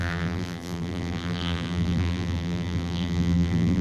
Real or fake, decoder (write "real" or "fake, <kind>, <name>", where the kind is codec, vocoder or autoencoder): fake, vocoder, BigVGAN v2